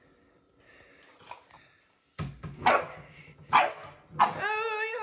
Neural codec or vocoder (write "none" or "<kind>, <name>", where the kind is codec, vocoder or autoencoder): none